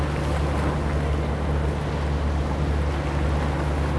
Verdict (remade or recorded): recorded